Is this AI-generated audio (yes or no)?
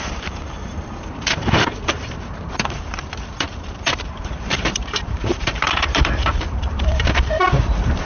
yes